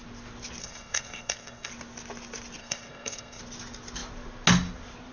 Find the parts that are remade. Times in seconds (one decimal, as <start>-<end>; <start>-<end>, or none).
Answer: 0.6-1.7; 2.6-3.4